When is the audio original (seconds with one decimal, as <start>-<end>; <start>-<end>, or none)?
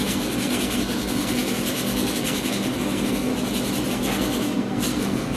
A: 3.3-3.9